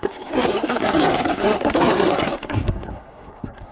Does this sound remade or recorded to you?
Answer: remade